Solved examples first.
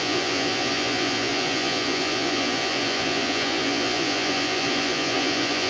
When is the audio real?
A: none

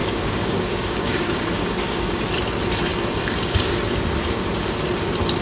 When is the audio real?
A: 2.2-5.4

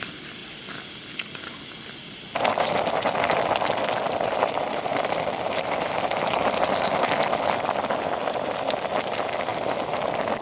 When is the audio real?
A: 0.0-4.9; 6.6-10.4